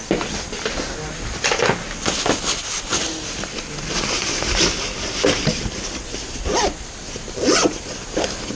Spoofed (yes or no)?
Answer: no